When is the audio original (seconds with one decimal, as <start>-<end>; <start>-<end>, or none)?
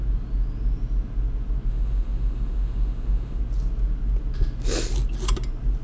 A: 0.0-1.7; 3.4-5.8